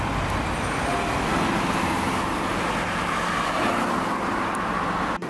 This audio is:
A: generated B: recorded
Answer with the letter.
B